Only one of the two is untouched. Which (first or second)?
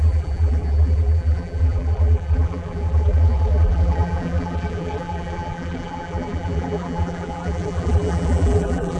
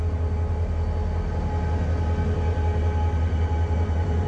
second